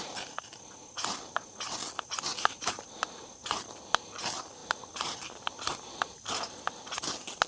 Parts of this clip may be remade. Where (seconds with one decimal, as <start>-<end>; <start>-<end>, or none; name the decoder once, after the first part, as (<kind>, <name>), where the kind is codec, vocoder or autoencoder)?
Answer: 2.3-2.8 (vocoder, BigVGAN v2)